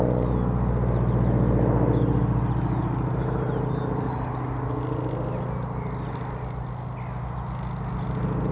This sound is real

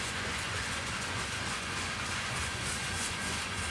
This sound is fake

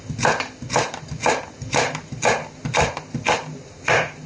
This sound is real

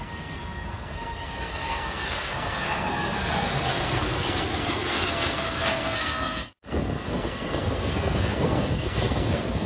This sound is fake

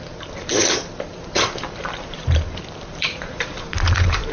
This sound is fake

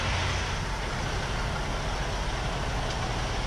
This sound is real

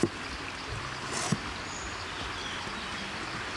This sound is real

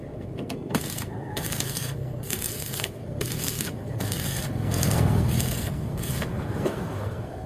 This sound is fake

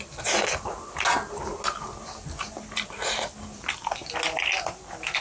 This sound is real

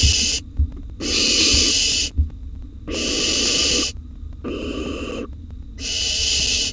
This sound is real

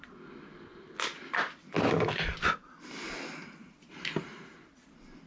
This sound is real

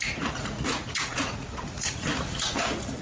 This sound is fake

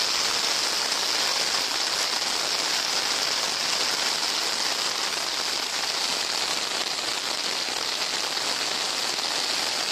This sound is real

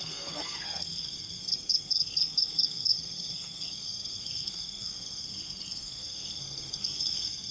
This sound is fake